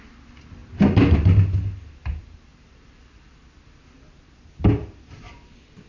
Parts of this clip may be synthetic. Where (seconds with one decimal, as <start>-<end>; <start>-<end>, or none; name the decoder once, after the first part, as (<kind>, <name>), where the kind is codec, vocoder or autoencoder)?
none